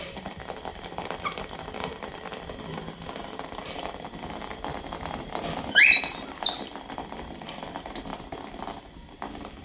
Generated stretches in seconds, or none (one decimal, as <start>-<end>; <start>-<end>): 0.0-4.7; 5.8-8.1; 8.6-9.6